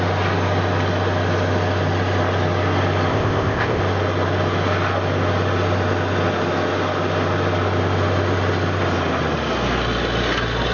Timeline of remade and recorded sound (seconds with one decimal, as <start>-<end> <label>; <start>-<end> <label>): 0.0-3.1 recorded; 3.1-3.8 remade; 3.8-10.7 recorded